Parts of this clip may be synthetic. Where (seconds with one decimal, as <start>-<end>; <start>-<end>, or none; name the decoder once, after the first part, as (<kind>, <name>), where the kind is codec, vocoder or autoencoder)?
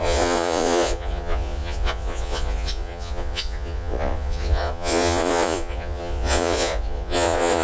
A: 0.0-7.6 (vocoder, Vocos)